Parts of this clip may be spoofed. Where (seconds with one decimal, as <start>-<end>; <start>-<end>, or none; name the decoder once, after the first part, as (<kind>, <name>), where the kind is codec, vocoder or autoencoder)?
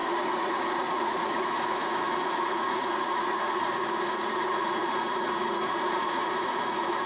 0.0-7.1 (vocoder, Vocos)